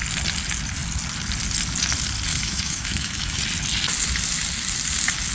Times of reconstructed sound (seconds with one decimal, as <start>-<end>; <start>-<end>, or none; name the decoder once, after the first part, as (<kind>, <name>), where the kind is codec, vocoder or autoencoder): 2.3-3.4 (autoencoder, DAC-VAE)